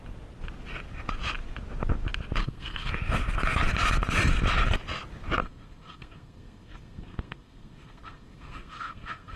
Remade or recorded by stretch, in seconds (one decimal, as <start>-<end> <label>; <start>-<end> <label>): 0.0-2.4 recorded; 2.4-2.9 remade; 2.9-5.4 recorded; 5.4-9.4 remade